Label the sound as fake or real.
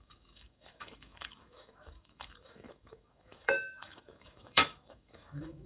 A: fake